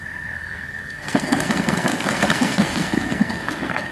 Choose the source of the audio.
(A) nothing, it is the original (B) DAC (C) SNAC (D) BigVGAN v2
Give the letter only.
C